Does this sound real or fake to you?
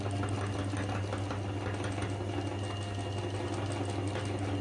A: real